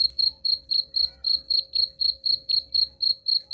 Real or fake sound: real